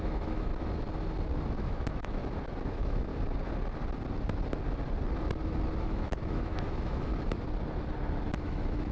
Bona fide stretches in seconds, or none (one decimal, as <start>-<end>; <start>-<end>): 0.5-1.5; 2.2-2.7; 3.1-5.8; 7.1-8.4